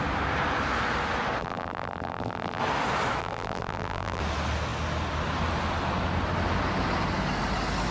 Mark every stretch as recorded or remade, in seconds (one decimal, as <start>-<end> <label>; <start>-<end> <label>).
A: 0.0-1.4 recorded; 1.4-2.6 remade; 2.6-3.2 recorded; 3.2-4.2 remade; 4.2-7.9 recorded